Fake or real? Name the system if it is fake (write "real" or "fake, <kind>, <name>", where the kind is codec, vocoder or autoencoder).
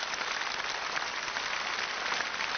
real